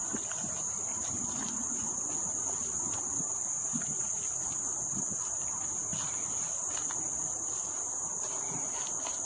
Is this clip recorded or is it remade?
recorded